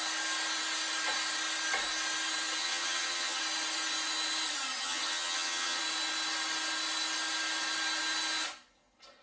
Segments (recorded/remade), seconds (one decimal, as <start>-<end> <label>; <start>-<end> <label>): 0.0-2.6 recorded; 2.6-3.4 remade; 3.4-4.8 recorded; 4.8-5.8 remade; 5.8-9.2 recorded